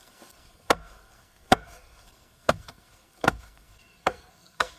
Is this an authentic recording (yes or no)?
no